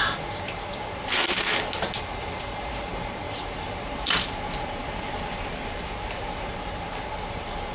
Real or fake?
fake